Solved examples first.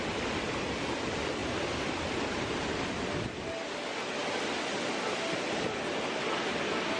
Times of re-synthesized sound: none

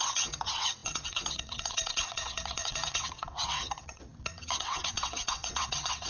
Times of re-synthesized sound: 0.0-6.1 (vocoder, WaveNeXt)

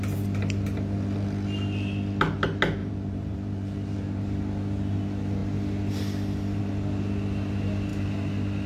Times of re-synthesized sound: 2.8-4.2 (vocoder, BigVGAN v2)